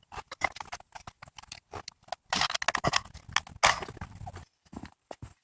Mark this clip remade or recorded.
recorded